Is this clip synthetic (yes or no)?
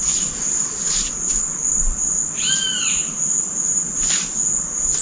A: no